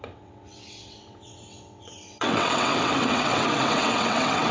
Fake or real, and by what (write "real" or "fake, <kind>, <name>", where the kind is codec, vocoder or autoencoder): fake, vocoder, WaveNeXt